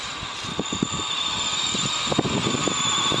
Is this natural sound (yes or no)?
yes